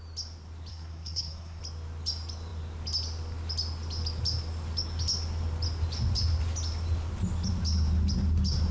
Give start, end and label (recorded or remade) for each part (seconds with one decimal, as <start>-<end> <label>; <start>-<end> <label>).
0.0-0.7 recorded; 0.7-1.6 remade; 1.6-8.7 recorded